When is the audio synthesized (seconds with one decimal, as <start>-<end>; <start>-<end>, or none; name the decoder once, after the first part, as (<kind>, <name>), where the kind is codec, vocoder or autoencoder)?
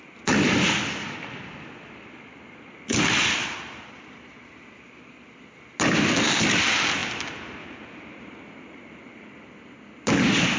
none